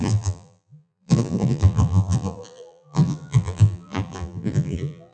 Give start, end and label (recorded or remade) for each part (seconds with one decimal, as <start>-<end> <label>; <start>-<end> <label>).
0.0-5.1 remade